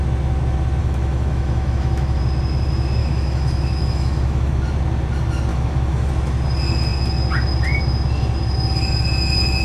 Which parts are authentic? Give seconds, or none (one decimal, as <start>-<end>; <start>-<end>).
0.0-0.8; 2.2-3.0; 4.6-5.5; 6.1-9.6